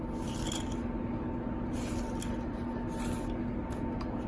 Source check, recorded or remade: recorded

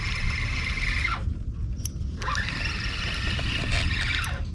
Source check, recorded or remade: recorded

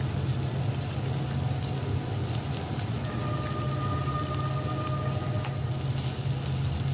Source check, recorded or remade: recorded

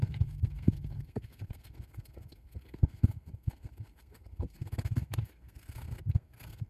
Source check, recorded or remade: remade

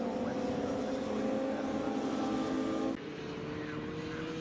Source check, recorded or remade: recorded